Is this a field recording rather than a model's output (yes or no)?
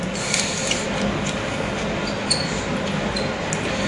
yes